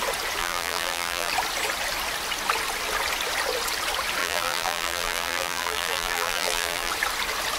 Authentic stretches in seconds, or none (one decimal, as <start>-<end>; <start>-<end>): 0.0-0.4; 1.3-4.2; 6.9-7.6